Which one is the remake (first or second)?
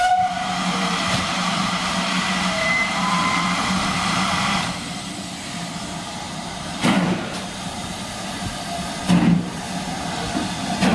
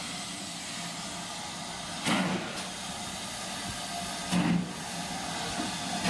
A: first